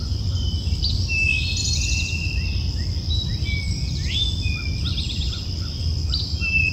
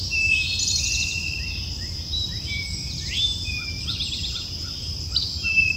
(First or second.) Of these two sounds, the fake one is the second